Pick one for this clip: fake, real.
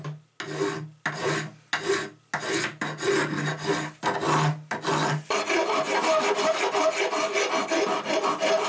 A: real